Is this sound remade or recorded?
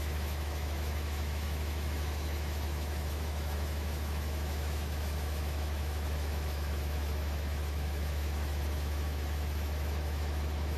remade